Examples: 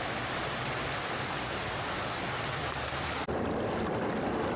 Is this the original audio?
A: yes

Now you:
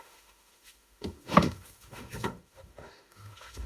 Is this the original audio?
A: no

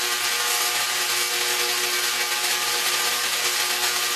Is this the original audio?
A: yes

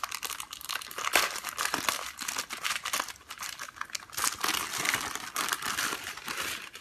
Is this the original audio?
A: yes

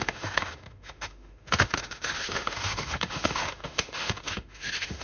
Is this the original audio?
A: no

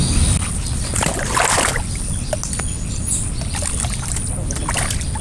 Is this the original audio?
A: yes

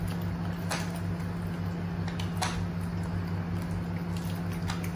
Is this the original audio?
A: yes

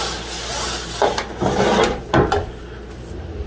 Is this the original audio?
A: yes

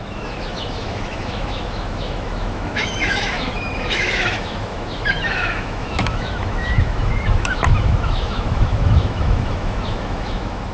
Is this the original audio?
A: no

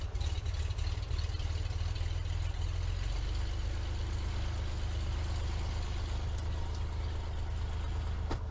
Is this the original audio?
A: yes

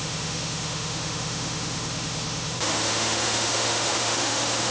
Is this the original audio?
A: no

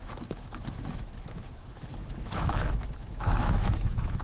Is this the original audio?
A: no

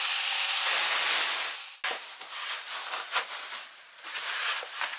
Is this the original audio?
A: yes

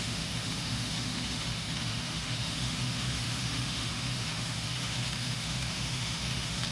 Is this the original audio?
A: no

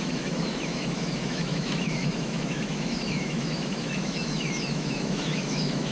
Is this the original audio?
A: no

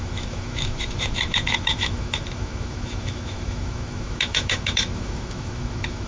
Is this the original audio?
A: no